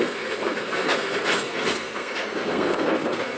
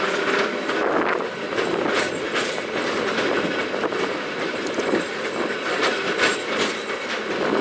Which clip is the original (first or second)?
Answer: second